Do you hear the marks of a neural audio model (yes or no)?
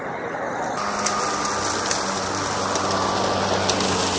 no